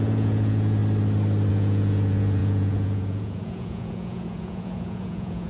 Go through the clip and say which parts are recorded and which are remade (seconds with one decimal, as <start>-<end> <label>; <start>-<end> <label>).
0.0-0.8 remade; 0.8-1.5 recorded; 1.5-5.5 remade